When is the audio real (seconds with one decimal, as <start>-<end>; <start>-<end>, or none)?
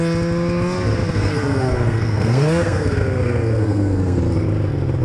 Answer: 0.0-1.2; 4.2-5.0